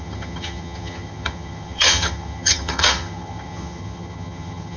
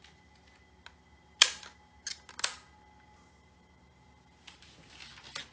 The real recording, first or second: second